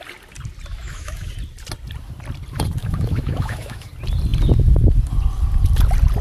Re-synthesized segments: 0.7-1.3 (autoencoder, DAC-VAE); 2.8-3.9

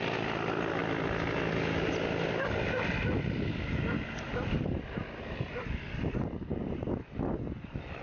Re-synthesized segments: none

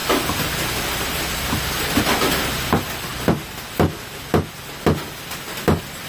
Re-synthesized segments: none

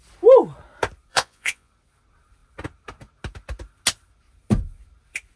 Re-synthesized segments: 1.1-1.7 (vocoder, Vocos)

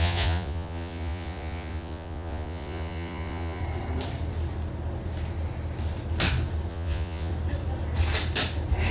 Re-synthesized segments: 0.0-3.6 (vocoder, Vocos); 6.7-7.3

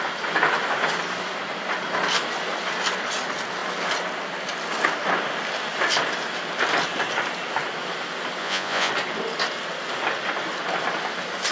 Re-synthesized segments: 8.4-8.9 (vocoder, Vocos)

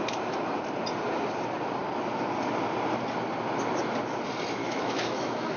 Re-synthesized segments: 4.6-5.6 (autoencoder, DAC-VAE)

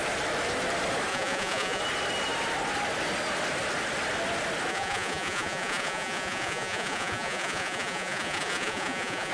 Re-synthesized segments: 1.1-1.8 (vocoder, Vocos); 4.7-9.3